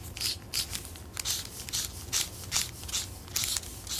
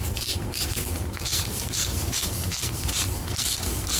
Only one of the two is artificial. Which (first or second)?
second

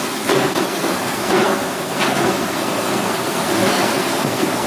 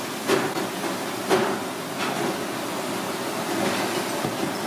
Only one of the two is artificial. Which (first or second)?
first